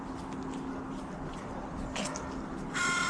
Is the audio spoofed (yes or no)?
no